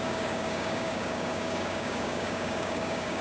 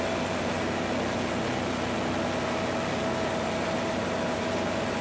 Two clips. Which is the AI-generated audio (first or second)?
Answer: first